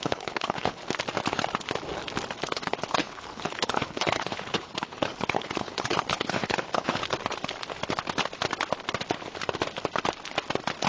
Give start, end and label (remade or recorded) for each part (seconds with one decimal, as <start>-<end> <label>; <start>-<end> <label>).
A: 0.0-0.8 remade; 0.8-2.4 recorded; 2.4-7.0 remade; 7.0-10.9 recorded